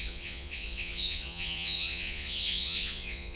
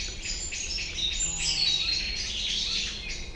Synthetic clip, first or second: first